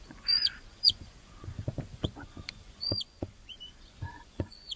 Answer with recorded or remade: remade